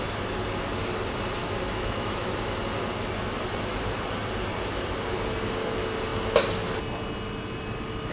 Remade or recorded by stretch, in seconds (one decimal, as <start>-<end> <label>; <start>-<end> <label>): 0.0-1.4 recorded; 1.4-2.6 remade; 2.6-8.1 recorded